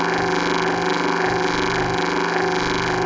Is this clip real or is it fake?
fake